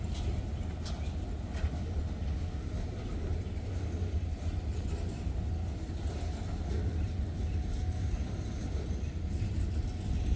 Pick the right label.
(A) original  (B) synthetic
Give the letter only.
A